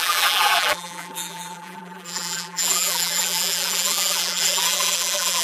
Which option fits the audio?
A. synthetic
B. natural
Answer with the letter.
A